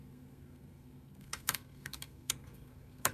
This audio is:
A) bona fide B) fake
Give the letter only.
B